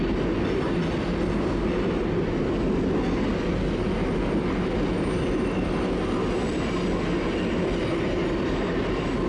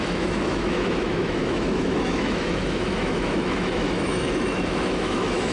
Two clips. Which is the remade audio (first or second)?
second